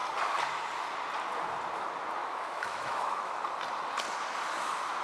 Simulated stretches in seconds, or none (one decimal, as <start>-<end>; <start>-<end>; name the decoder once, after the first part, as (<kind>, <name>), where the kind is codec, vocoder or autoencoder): 2.2-3.4 (autoencoder, DAC-VAE)